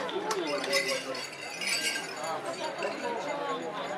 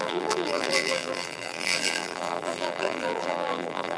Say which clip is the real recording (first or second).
first